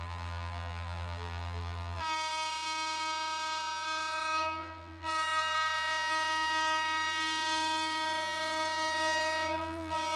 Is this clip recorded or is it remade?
remade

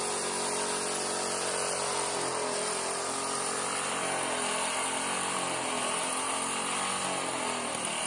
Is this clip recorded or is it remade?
recorded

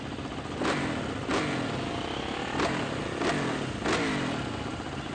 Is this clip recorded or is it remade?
recorded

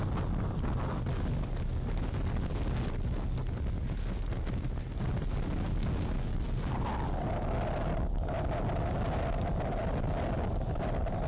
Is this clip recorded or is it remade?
recorded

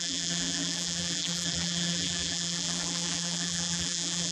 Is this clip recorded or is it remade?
remade